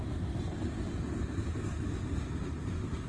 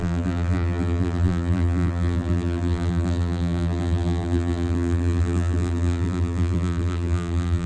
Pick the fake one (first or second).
second